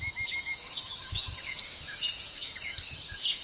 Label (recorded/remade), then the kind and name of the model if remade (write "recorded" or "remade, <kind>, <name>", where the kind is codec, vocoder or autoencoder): remade, autoencoder, DAC-VAE